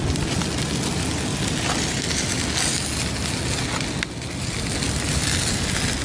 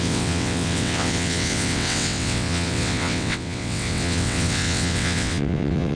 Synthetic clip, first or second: second